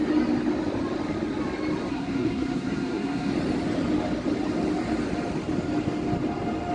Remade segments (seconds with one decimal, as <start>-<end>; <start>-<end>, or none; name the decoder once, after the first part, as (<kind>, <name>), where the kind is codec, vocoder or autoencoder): 1.9-3.3 (codec, SNAC)